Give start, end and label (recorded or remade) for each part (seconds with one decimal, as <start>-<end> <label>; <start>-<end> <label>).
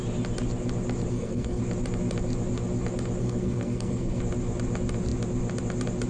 0.0-1.1 recorded; 1.1-1.6 remade; 1.6-3.2 recorded; 3.2-4.2 remade; 4.2-6.1 recorded